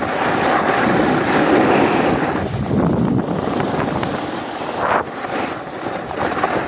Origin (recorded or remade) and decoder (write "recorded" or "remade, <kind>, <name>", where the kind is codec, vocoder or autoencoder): remade, vocoder, BigVGAN v2